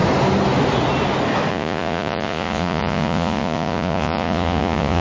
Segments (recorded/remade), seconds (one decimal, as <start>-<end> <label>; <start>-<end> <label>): 0.0-1.5 recorded; 1.5-5.0 remade